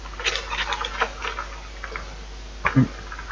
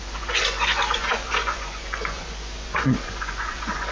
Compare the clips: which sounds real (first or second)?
first